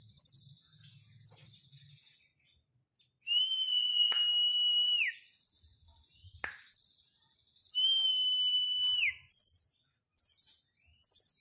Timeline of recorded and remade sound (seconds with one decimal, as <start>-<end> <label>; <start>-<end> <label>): 0.0-3.5 recorded; 3.5-4.2 remade; 4.2-11.4 recorded